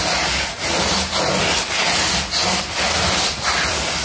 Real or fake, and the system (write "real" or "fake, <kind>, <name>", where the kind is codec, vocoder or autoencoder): real